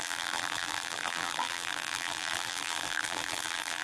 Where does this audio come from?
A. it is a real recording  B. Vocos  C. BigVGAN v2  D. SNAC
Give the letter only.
C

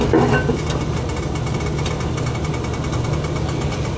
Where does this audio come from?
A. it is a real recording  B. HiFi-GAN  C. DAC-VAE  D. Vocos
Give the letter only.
A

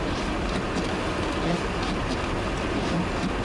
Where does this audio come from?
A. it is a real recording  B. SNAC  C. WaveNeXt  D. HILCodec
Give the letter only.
A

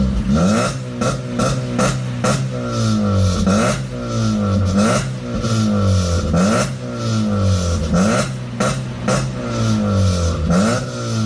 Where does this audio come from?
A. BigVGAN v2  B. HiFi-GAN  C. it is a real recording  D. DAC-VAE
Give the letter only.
C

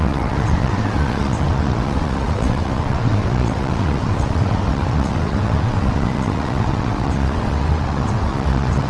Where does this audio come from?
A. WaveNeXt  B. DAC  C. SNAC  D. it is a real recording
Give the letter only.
A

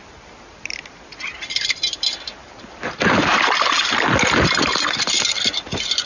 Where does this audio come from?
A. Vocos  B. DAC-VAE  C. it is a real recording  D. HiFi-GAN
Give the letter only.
C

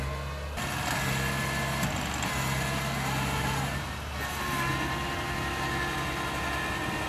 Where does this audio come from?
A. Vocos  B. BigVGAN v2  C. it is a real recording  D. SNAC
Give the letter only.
C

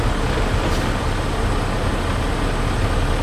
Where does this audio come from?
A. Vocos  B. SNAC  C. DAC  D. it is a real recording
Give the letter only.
D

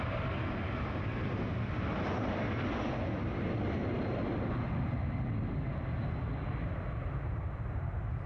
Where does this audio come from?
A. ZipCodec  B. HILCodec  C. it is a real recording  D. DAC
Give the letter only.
C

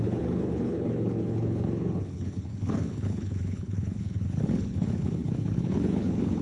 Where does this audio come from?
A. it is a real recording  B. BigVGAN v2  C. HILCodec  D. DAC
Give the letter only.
C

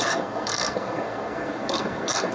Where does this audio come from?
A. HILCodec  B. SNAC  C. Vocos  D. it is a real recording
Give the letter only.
B